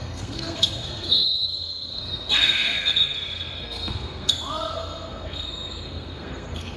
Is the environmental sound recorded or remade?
remade